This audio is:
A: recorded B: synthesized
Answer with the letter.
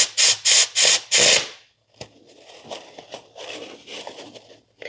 A